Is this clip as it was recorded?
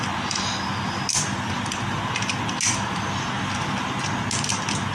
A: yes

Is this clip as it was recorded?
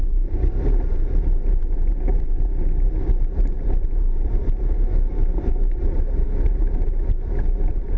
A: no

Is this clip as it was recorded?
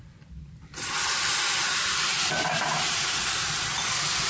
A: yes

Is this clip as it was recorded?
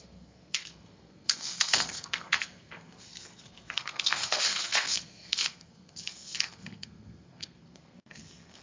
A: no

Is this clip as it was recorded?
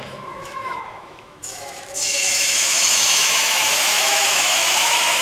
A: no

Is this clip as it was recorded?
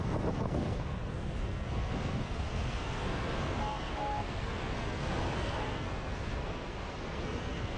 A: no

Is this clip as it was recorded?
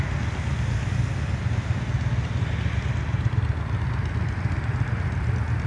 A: yes